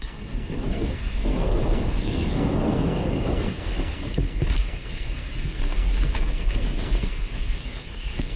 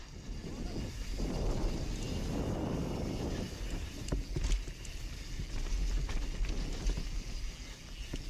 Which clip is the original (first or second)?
second